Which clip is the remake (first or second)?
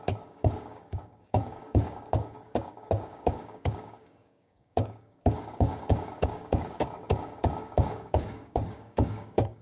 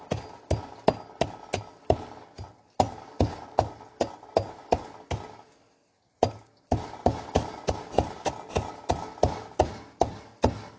first